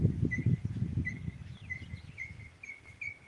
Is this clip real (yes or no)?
yes